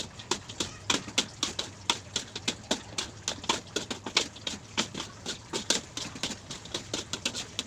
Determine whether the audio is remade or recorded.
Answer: recorded